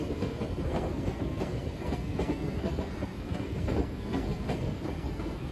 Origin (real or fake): fake